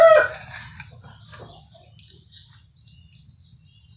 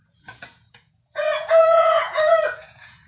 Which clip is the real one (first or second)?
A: first